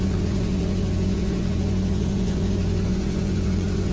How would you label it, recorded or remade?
remade